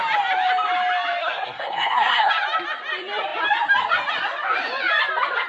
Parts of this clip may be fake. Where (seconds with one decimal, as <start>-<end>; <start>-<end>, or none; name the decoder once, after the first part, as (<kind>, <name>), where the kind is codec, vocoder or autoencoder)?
1.2-2.3 (codec, SNAC)